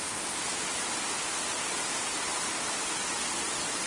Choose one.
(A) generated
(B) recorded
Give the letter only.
B